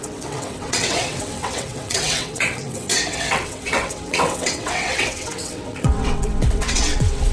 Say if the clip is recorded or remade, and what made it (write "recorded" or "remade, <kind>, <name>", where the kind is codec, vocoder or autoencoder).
remade, vocoder, WaveNeXt